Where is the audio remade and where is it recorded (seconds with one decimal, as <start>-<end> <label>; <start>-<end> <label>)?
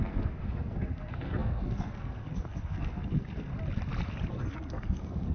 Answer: 0.0-3.5 remade; 3.5-4.3 recorded; 4.3-5.3 remade